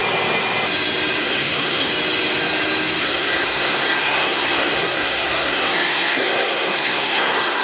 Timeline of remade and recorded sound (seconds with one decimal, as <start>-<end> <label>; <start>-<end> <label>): 0.0-1.2 recorded; 1.2-1.9 remade; 1.9-3.0 recorded; 3.0-7.6 remade